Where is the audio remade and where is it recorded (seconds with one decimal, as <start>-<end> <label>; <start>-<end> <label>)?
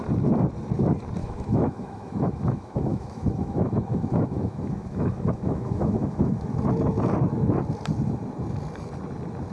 0.0-1.2 recorded; 1.2-6.5 remade; 6.5-9.5 recorded